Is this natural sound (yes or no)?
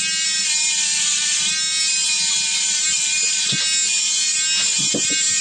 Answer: yes